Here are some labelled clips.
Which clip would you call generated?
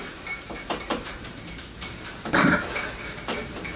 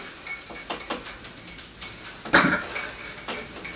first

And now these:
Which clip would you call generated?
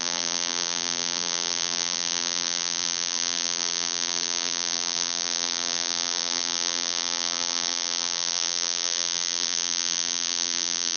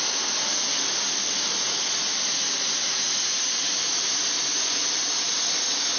first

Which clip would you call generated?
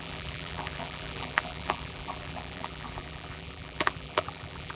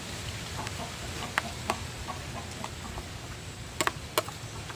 first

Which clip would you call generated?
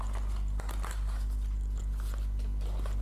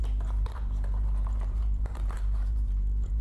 second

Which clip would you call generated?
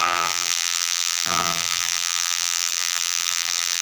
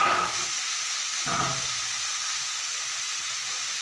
first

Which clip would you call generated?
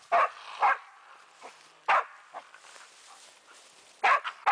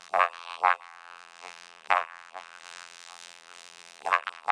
second